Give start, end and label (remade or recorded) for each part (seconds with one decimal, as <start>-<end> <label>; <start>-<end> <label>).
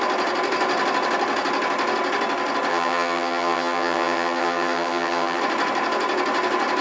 0.0-2.7 recorded; 2.7-5.4 remade; 5.4-6.8 recorded